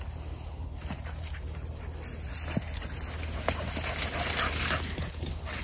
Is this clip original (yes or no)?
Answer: yes